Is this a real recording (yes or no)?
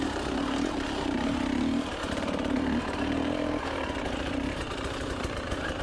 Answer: no